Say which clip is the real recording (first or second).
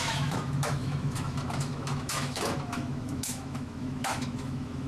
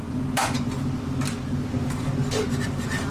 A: second